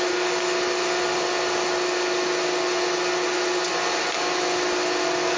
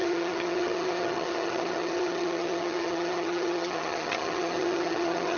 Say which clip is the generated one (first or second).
second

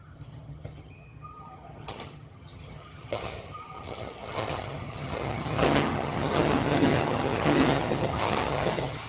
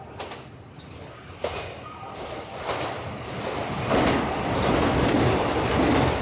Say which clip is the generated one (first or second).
first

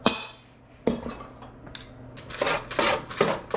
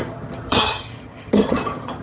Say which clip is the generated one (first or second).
second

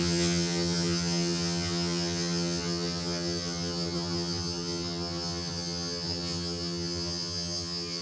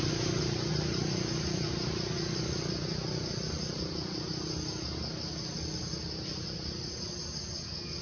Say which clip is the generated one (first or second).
first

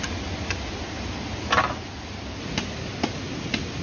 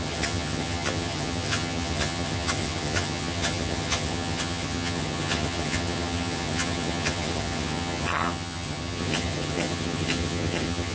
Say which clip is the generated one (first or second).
second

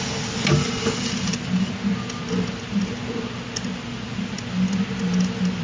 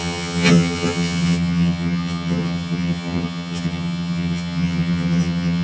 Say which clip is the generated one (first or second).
second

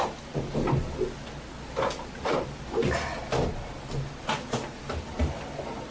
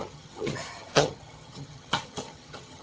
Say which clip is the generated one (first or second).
second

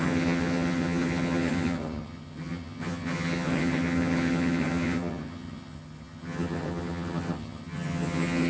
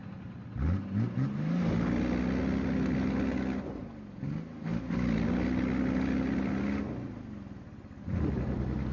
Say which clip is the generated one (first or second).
first